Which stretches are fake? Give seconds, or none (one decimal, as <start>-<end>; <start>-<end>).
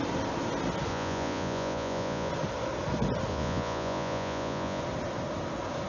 0.9-2.3; 3.3-4.8